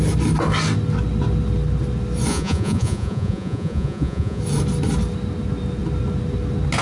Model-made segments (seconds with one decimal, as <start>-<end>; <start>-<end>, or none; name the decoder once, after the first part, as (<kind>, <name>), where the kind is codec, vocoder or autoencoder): 2.3-4.4 (vocoder, Vocos)